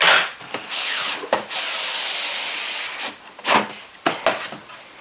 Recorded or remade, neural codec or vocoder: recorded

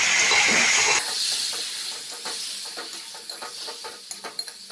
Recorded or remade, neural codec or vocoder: recorded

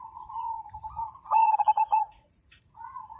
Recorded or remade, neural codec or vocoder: remade, vocoder, Vocos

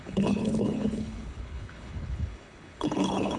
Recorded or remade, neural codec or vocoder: remade, codec, HILCodec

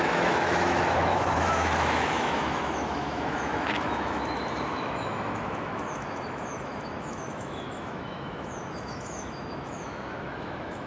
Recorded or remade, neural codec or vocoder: remade, autoencoder, DAC-VAE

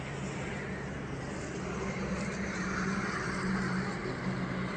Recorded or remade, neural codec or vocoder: recorded